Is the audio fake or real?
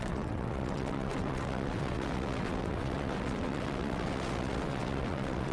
fake